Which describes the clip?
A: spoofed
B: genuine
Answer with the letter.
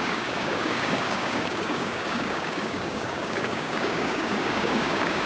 A